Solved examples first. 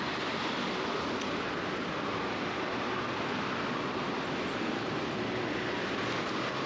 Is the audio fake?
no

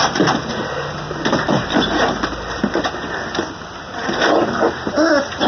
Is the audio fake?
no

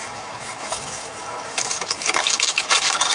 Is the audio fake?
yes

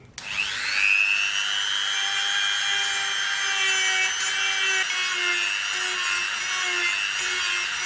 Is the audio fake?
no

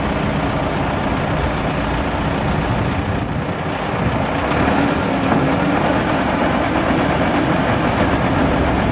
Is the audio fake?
no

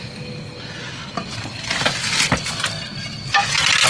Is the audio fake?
no